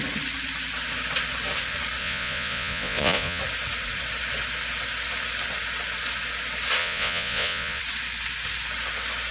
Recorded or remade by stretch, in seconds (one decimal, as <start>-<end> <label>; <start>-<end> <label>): 0.0-2.0 recorded; 2.0-3.4 remade; 3.4-6.8 recorded; 6.8-7.8 remade; 7.8-9.3 recorded

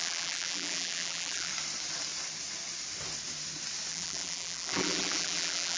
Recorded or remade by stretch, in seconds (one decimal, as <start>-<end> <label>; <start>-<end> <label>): 0.0-1.5 remade; 1.5-3.9 recorded; 3.9-5.8 remade

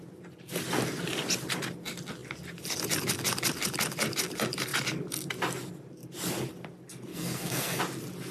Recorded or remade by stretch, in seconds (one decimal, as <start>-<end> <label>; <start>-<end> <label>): 0.0-7.1 recorded; 7.1-7.8 remade; 7.8-8.3 recorded

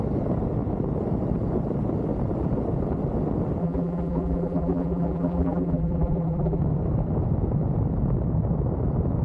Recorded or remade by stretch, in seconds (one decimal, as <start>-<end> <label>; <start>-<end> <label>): 0.0-3.6 recorded; 3.6-6.6 remade; 6.6-9.2 recorded

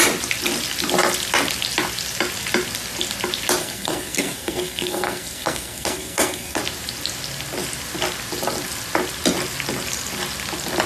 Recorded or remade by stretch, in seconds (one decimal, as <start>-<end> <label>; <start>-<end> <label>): 0.0-3.6 recorded; 3.6-6.6 remade; 6.6-10.9 recorded

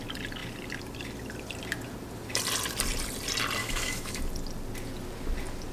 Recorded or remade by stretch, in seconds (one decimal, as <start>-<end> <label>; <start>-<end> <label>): 0.0-3.6 recorded; 3.6-4.2 remade; 4.2-5.7 recorded